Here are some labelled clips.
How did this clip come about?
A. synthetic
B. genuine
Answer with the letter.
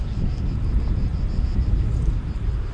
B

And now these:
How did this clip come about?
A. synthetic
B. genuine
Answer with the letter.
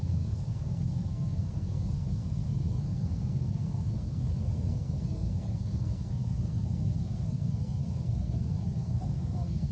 A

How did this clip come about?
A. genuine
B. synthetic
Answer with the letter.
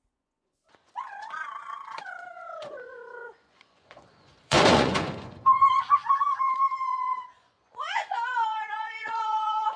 B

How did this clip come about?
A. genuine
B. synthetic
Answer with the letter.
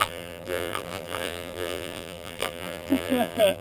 B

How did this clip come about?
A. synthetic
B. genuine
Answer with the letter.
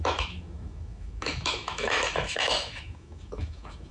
A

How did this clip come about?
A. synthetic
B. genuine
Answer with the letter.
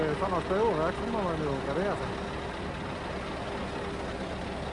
B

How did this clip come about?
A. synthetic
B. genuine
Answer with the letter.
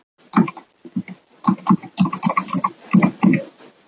B